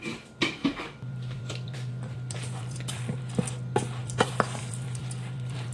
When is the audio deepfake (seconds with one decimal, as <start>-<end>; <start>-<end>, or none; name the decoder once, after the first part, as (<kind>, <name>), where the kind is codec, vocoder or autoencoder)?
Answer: 0.6-3.2 (vocoder, BigVGAN v2); 4.0-5.7